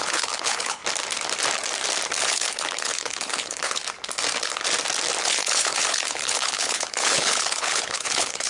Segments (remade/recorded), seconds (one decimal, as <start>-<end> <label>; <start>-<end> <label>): 0.0-0.8 remade; 0.8-2.2 recorded; 2.2-3.8 remade; 3.8-5.2 recorded; 5.2-8.5 remade